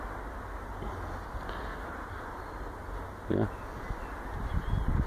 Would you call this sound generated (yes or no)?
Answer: no